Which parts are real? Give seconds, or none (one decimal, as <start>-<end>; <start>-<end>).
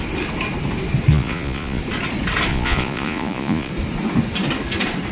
0.0-1.1; 1.8-2.5; 3.7-5.1